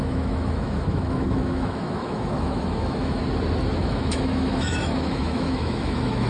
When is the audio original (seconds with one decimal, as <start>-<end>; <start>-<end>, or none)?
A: 3.2-3.8